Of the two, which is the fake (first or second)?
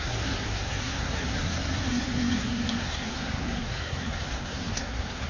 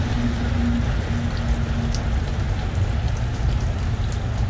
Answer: first